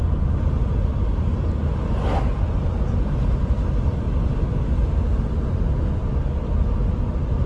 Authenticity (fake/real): real